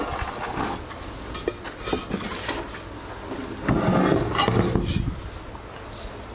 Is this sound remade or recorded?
recorded